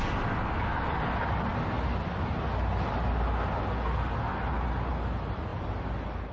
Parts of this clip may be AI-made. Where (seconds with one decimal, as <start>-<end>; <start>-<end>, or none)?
none